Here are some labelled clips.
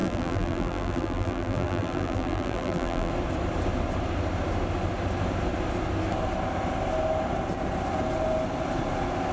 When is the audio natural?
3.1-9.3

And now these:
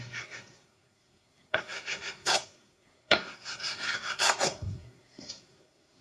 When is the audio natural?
none

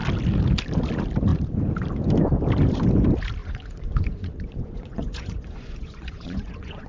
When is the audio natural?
0.0-3.4

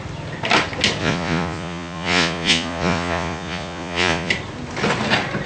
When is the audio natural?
0.0-1.0; 4.3-5.5

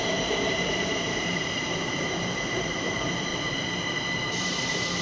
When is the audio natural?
3.3-4.3

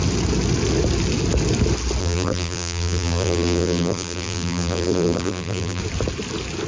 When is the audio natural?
0.0-2.0; 5.8-6.7

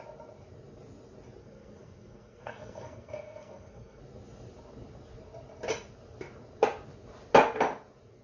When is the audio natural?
0.0-1.4; 4.0-8.2